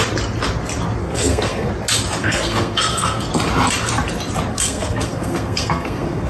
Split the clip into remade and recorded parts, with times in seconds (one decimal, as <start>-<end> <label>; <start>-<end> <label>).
0.0-1.0 recorded; 1.0-1.7 remade; 1.7-2.2 recorded; 2.2-3.3 remade; 3.3-4.5 recorded; 4.5-6.3 remade